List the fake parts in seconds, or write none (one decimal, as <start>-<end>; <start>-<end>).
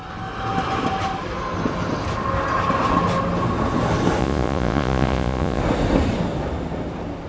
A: 4.2-5.6